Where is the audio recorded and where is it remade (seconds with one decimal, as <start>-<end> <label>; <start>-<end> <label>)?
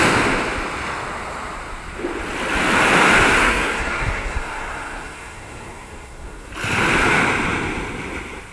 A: 0.0-3.4 recorded; 3.4-6.5 remade; 6.5-8.5 recorded